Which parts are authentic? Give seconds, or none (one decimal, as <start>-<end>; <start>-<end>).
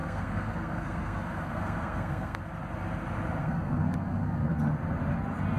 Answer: 2.4-3.4; 4.5-5.6